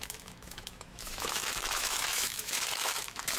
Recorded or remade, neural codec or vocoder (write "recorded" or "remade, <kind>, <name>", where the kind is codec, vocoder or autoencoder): remade, autoencoder, DAC-VAE